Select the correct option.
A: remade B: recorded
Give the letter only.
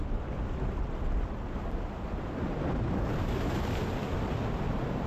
B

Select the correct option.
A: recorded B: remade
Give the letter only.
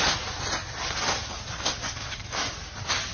A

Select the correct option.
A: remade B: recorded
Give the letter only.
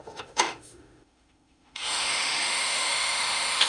A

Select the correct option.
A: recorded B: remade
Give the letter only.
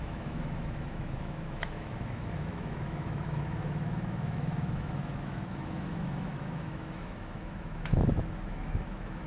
B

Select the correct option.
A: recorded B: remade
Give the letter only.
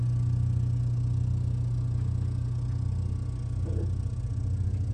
A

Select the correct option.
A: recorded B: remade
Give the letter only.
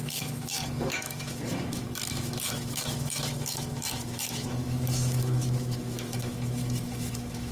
B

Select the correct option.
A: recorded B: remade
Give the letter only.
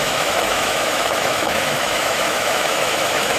B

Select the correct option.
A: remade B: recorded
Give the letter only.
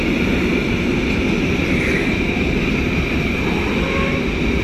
B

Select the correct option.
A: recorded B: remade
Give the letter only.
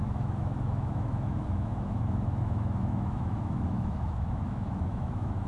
B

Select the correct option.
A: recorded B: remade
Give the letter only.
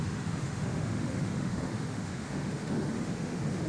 B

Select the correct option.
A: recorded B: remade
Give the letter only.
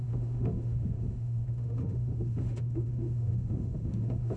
B